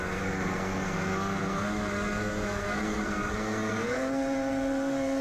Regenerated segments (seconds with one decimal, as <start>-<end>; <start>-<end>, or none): 0.0-5.2